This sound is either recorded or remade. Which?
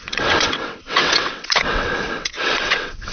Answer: remade